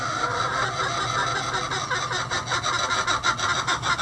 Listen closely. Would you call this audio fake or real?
real